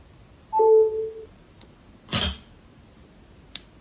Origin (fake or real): real